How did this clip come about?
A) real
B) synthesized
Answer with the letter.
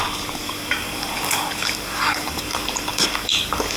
B